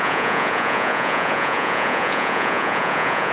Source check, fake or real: fake